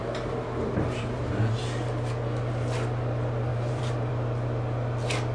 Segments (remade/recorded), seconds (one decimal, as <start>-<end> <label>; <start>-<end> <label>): 0.0-1.4 remade; 1.4-3.5 recorded; 3.5-4.1 remade; 4.1-5.3 recorded